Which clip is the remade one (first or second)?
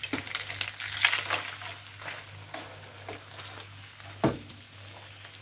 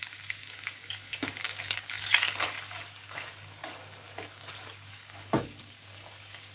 second